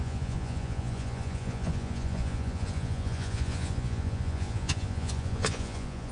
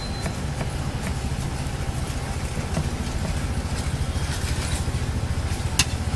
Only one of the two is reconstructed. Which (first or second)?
first